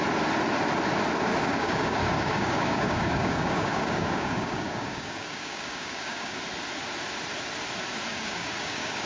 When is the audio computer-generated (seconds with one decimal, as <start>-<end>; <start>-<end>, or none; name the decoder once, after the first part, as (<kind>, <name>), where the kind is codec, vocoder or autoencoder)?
1.3-6.4 (codec, DAC); 8.1-9.1